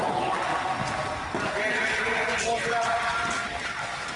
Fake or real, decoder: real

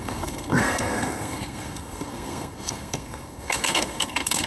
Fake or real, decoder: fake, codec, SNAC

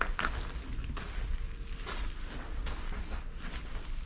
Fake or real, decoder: real